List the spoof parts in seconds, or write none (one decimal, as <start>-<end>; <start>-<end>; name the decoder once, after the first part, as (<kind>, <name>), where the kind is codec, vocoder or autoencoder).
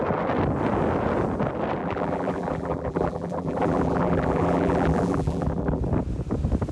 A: 1.8-5.8 (vocoder, BigVGAN v2)